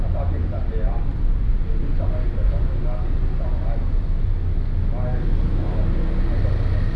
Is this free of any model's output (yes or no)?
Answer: yes